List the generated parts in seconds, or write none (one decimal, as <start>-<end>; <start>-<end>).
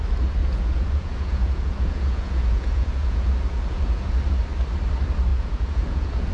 0.4-4.2; 5.3-6.3